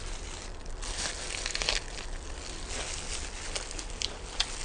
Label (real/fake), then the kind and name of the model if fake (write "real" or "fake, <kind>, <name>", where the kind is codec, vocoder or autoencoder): real